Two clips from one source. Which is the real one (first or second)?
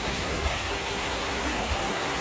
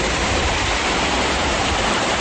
second